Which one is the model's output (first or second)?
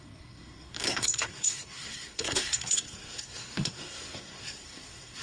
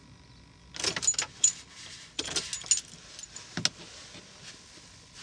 first